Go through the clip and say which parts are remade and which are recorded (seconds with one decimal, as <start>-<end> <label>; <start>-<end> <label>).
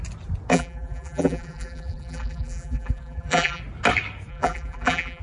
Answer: 0.0-0.5 recorded; 0.5-3.6 remade; 3.6-4.3 recorded; 4.3-5.2 remade